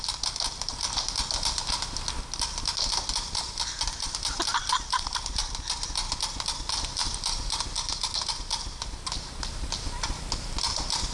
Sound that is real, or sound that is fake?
real